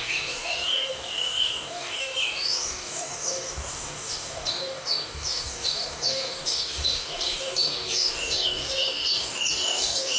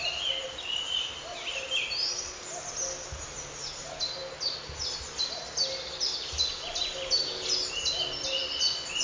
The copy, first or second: first